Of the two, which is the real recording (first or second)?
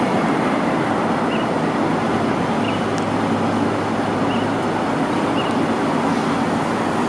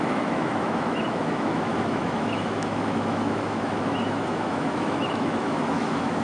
first